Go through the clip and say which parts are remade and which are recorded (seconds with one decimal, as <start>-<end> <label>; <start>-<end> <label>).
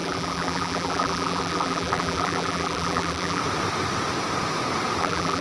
0.0-3.4 remade; 3.4-5.0 recorded; 5.0-5.4 remade